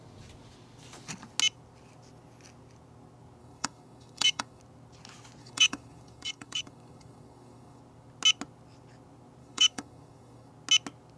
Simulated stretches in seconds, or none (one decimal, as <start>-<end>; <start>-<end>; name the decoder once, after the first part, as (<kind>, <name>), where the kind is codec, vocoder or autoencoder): 3.4-4.6 (codec, DAC); 5.4-7.8; 9.4-10.5